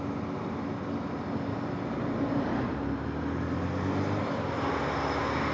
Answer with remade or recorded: recorded